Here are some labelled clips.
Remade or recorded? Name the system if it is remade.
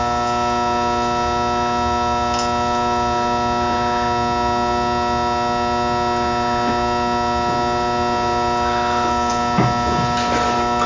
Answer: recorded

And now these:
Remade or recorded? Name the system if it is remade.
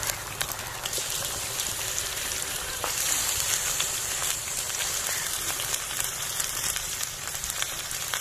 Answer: remade, vocoder, BigVGAN v2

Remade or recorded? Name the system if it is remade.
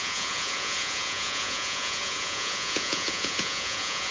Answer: remade, vocoder, Vocos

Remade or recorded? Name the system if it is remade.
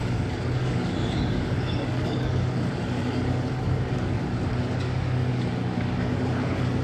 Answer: remade, codec, DAC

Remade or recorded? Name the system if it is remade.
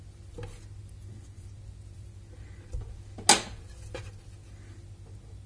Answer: recorded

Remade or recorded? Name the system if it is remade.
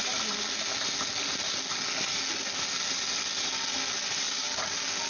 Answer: recorded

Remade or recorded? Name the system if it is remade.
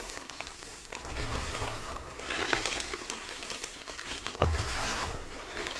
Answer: remade, codec, SNAC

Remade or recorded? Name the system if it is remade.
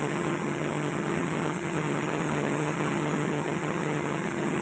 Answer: remade, vocoder, HiFi-GAN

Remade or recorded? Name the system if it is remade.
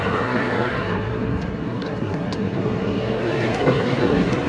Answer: remade, codec, SNAC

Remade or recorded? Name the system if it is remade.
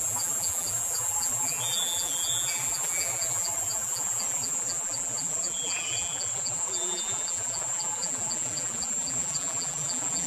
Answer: remade, vocoder, BigVGAN v2